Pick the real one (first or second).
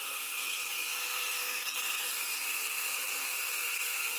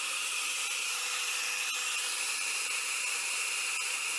second